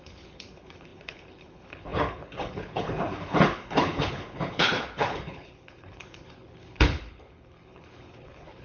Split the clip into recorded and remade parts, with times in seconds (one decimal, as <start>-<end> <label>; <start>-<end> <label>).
0.0-8.6 remade